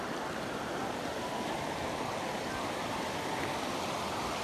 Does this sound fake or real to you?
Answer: real